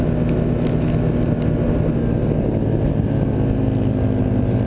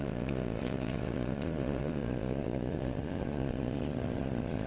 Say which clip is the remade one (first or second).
second